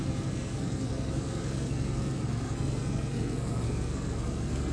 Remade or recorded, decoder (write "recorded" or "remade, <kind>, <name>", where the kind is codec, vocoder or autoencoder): remade, codec, SNAC